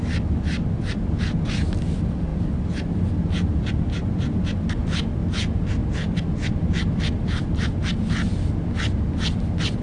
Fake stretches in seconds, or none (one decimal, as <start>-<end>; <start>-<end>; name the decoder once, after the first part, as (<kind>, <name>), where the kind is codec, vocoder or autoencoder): none